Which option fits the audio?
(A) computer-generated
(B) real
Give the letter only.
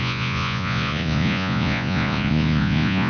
A